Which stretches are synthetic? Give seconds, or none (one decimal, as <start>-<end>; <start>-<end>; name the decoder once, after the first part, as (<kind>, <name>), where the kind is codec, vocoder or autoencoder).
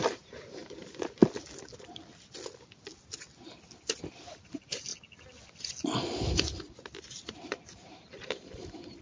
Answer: 0.0-1.2 (vocoder, BigVGAN v2); 4.0-4.9; 7.0-9.0